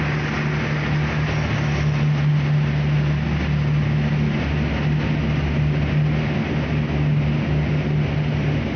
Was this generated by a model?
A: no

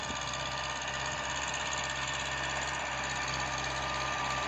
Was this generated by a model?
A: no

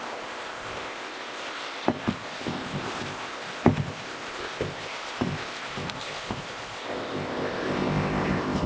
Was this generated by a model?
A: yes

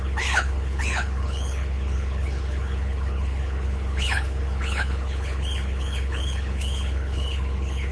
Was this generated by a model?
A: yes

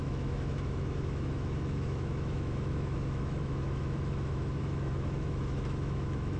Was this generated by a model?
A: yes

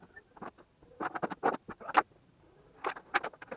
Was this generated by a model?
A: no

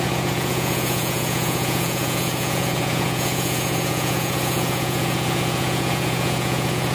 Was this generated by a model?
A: yes